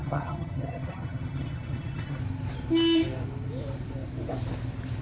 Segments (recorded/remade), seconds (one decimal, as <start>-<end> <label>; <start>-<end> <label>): 0.0-2.2 remade; 2.2-5.0 recorded